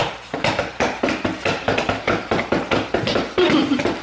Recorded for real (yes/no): yes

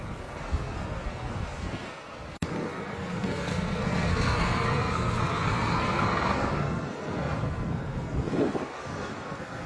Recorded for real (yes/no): no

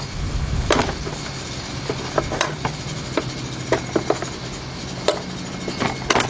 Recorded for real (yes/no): yes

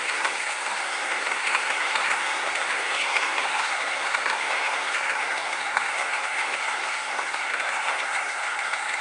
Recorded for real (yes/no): no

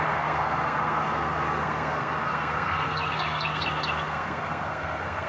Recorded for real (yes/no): no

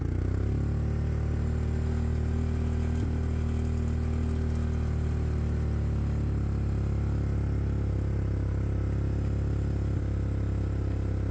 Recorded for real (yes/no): yes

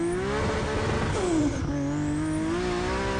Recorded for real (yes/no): yes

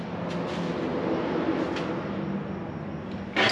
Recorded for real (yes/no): yes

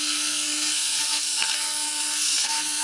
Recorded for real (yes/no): no